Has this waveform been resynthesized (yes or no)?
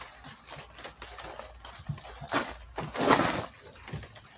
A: no